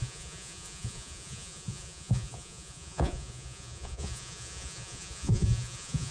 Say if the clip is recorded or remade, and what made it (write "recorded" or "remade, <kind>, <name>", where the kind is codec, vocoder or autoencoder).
remade, vocoder, Vocos